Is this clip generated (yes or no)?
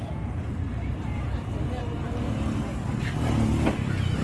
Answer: no